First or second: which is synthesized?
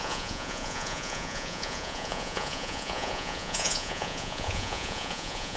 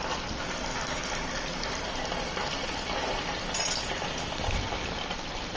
first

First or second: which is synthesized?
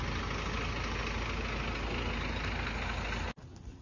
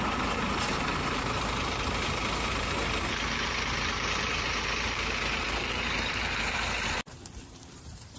second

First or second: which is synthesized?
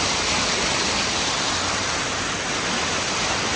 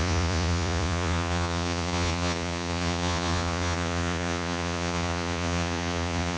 second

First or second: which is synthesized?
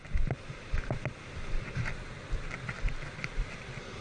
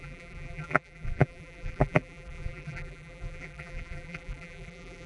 second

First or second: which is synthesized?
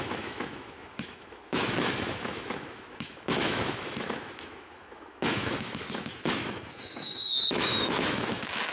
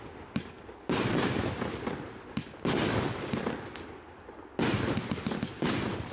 first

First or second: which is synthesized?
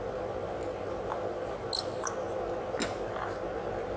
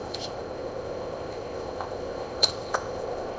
second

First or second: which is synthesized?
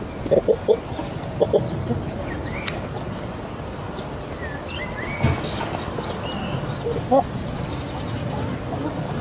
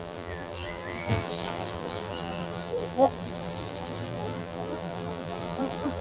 second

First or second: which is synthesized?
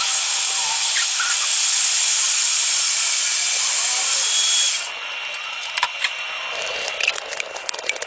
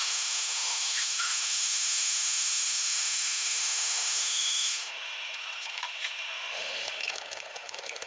second